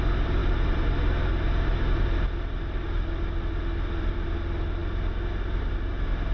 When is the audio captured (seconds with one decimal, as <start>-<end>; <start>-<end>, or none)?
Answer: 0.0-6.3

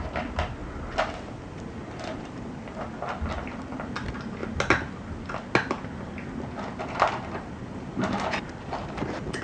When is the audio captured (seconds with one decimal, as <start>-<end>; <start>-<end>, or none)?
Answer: 0.0-9.4

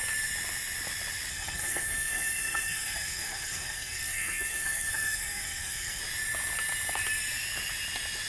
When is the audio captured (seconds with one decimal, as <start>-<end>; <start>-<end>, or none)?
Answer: 0.0-1.3; 6.0-8.3

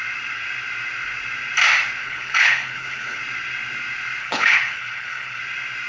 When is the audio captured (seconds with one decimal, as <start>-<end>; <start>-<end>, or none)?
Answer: 0.0-2.0; 3.2-4.2; 5.4-5.9

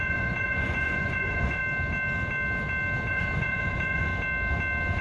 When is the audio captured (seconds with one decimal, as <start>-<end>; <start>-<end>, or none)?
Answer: 1.6-3.1; 4.1-5.0